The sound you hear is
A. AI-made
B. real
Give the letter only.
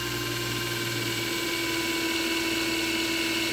B